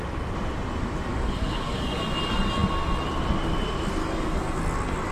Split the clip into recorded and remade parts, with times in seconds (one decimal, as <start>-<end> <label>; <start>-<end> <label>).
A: 0.0-1.1 recorded; 1.1-2.0 remade; 2.0-4.0 recorded; 4.0-4.6 remade; 4.6-5.1 recorded